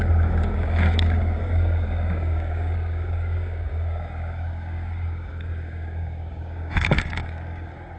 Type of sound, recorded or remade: remade